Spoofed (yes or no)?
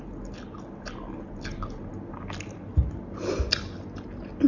no